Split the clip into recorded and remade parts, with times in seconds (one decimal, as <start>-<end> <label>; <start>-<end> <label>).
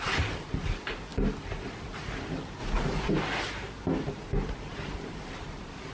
0.0-2.6 recorded; 2.6-3.1 remade; 3.1-5.9 recorded